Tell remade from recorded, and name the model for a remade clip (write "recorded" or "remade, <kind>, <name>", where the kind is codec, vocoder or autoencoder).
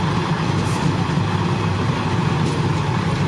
recorded